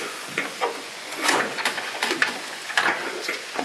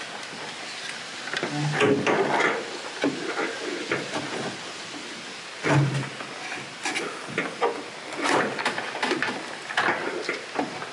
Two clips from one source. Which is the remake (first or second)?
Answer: first